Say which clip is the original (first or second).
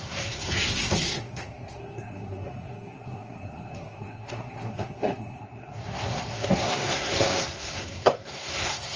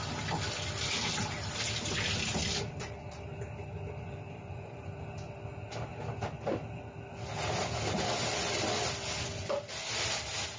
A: second